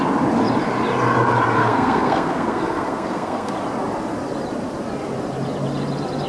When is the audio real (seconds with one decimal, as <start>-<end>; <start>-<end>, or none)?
0.0-1.6; 3.5-6.3